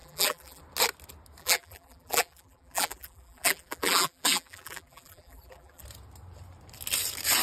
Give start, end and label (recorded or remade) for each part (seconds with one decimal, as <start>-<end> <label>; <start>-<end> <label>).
0.0-0.6 remade; 0.6-1.4 recorded; 1.4-5.8 remade; 5.8-7.4 recorded